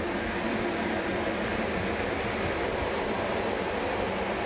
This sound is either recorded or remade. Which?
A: recorded